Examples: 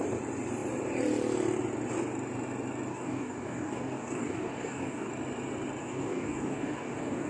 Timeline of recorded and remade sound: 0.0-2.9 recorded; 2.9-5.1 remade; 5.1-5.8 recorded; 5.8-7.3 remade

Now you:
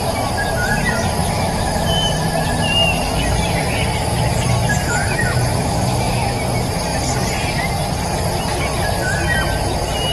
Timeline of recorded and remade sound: 0.0-1.2 recorded; 1.2-1.8 remade; 1.8-5.0 recorded; 5.0-6.4 remade; 6.4-10.1 recorded

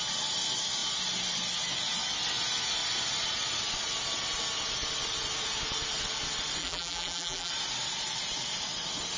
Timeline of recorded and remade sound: 0.0-6.6 recorded; 6.6-7.5 remade; 7.5-9.2 recorded

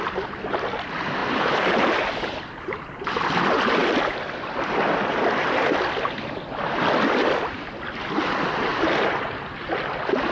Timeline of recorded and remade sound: 0.0-1.2 recorded; 1.2-2.5 remade; 2.5-10.3 recorded

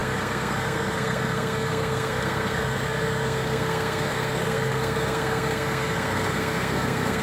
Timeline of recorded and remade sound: 0.0-7.2 remade

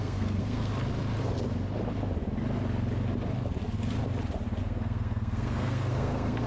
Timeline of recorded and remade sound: 0.0-0.7 remade; 0.7-4.6 recorded; 4.6-6.5 remade